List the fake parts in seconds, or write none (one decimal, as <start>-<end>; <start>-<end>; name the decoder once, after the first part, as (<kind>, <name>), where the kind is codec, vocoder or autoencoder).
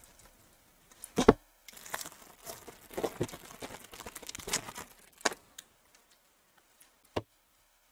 1.6-2.2 (vocoder, BigVGAN v2)